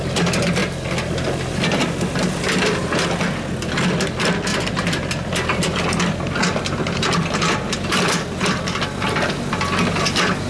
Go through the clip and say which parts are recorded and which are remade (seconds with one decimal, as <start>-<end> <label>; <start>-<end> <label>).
0.0-4.5 recorded; 4.5-9.3 remade; 9.3-10.5 recorded